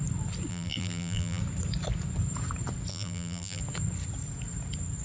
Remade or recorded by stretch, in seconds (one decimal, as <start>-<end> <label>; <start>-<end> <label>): 0.0-0.5 recorded; 0.5-1.4 remade; 1.4-2.9 recorded; 2.9-3.6 remade; 3.6-5.0 recorded